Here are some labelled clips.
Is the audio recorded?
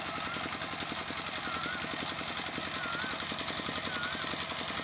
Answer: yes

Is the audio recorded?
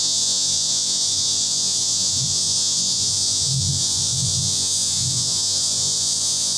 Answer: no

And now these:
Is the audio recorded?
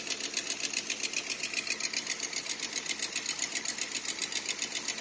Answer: yes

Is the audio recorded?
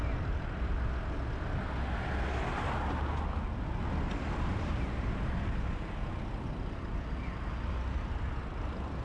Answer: yes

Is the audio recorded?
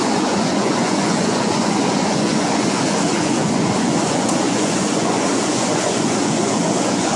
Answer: no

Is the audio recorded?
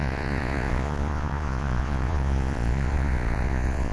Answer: no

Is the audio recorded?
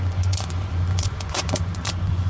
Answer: no